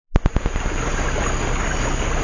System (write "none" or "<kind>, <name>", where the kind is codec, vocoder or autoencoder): none